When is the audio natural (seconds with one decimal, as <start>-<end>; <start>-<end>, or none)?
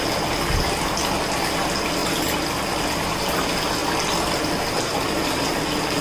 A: 0.0-6.0